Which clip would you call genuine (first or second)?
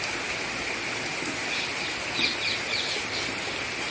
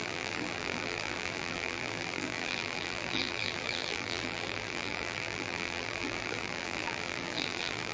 first